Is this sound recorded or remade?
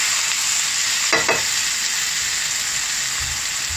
recorded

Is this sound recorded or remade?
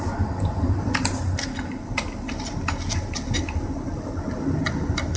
recorded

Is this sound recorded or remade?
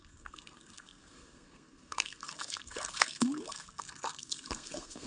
remade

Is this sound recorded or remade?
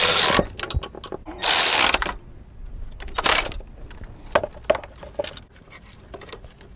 recorded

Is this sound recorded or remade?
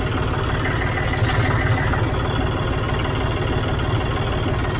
recorded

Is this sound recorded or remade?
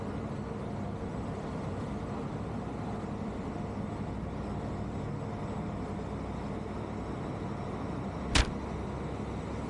recorded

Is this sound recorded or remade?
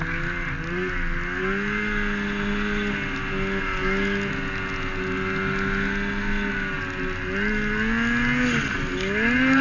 recorded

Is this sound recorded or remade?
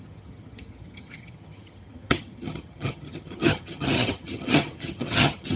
remade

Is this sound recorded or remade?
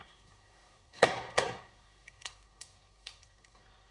remade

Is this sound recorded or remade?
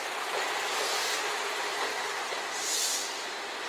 recorded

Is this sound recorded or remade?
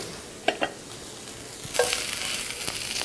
recorded